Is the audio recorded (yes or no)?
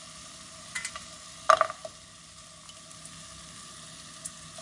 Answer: yes